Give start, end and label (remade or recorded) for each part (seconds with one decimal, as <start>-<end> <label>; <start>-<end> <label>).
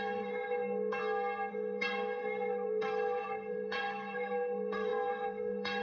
0.0-1.0 remade; 1.0-1.5 recorded; 1.5-5.8 remade